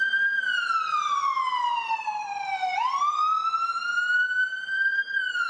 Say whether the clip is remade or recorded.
remade